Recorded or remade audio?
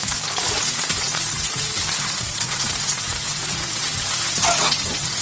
remade